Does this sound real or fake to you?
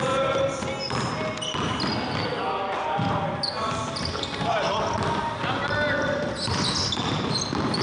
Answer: real